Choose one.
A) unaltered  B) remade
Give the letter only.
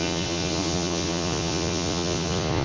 B